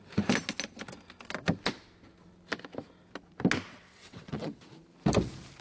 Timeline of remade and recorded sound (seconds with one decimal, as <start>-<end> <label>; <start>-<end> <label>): 0.0-3.7 recorded; 3.7-4.6 remade; 4.6-5.6 recorded